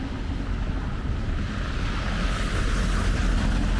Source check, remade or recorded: recorded